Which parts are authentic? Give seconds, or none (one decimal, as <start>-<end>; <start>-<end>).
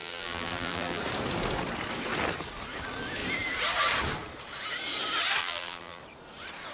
1.0-5.4; 6.0-6.7